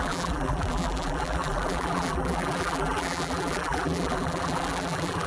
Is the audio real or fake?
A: fake